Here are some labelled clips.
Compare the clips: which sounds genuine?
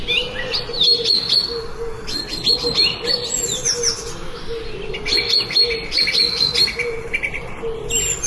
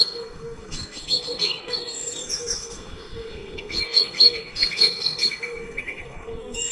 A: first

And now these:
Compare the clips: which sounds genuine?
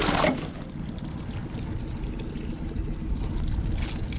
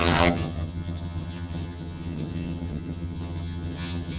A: first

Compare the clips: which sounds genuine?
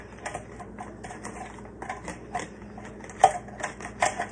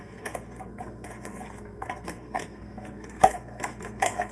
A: first